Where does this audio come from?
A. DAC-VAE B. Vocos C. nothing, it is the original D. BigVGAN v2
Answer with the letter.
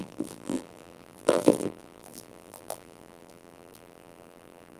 D